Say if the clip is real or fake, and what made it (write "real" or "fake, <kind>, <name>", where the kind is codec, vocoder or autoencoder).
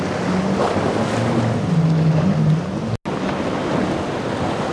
real